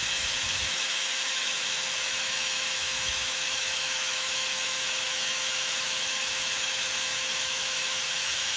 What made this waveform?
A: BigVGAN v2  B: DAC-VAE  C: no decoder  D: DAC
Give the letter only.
B